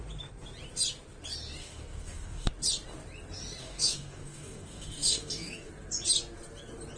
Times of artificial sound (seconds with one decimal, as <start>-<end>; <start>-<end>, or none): 1.6-2.5; 3.6-5.7